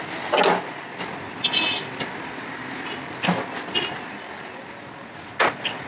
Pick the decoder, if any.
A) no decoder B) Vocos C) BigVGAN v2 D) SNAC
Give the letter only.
A